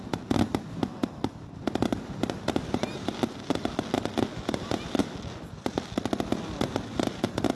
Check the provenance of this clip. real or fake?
real